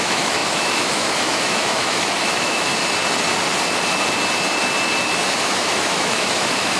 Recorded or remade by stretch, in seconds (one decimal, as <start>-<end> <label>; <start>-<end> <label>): 0.0-2.7 remade; 2.7-5.4 recorded; 5.4-6.8 remade